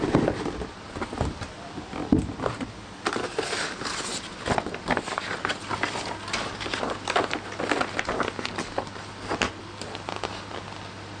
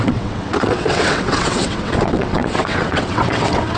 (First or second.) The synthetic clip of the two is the second